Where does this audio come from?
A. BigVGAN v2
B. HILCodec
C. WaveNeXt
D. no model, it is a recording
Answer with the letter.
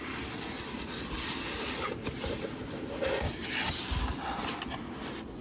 A